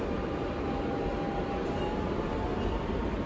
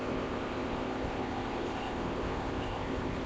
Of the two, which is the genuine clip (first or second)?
first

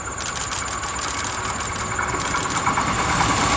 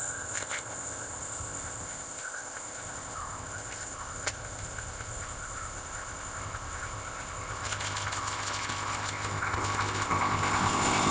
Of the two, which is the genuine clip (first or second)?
first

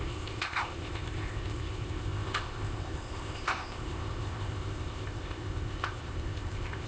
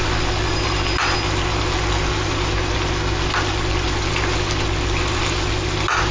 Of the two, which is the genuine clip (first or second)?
second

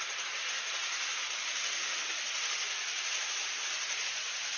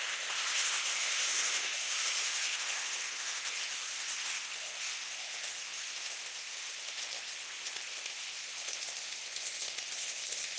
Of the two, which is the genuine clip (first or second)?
first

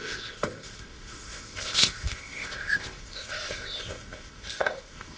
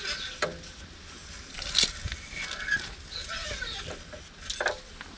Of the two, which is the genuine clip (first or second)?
second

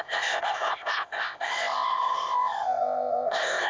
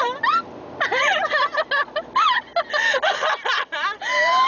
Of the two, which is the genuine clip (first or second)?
second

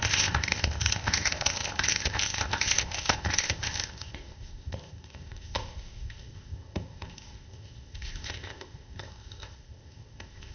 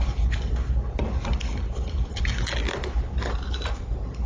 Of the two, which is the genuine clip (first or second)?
second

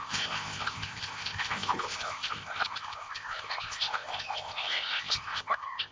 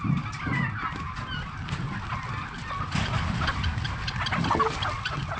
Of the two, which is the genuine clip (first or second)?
second